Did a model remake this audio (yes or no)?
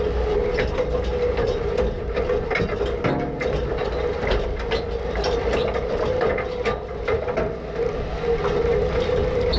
no